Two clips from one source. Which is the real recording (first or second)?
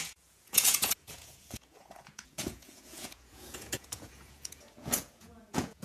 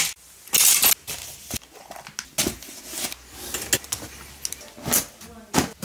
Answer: second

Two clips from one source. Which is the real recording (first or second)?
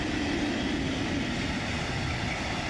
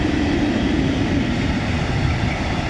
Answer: first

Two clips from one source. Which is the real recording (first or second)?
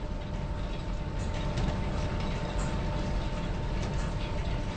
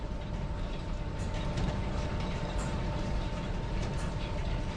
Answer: first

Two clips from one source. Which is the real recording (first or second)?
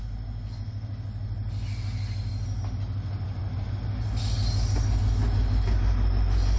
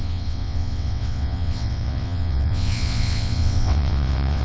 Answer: first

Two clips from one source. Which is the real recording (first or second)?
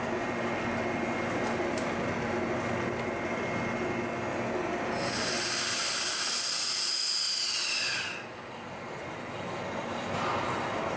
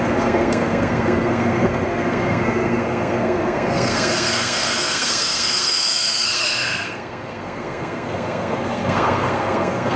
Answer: first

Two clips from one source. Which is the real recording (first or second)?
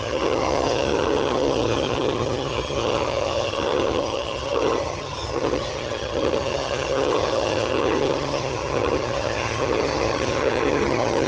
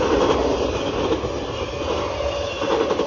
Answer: second